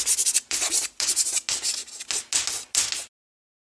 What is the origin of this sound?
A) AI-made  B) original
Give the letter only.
B